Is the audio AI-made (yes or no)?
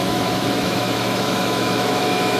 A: yes